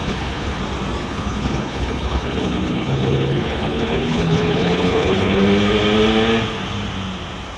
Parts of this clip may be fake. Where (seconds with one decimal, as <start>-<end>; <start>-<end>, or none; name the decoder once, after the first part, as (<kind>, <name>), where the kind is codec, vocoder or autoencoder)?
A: 0.0-0.6 (codec, HILCodec); 1.0-5.4